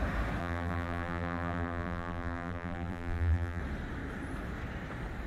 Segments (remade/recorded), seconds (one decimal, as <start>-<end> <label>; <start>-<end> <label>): 0.0-0.4 recorded; 0.4-3.6 remade; 3.6-5.3 recorded